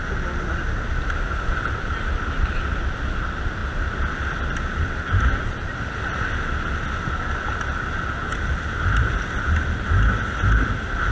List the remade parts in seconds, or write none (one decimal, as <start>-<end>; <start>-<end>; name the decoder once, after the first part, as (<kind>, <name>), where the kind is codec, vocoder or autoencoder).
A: none